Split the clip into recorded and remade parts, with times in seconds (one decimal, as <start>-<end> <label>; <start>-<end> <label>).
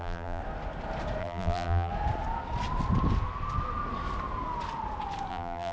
0.0-0.4 remade; 0.4-1.2 recorded; 1.2-1.9 remade; 1.9-5.3 recorded; 5.3-5.7 remade